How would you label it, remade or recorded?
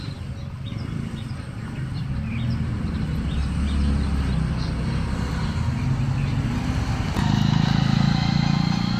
recorded